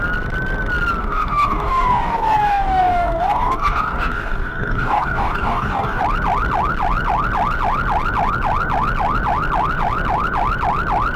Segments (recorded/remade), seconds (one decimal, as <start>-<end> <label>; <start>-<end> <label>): 0.0-1.0 recorded; 1.0-6.0 remade; 6.0-11.2 recorded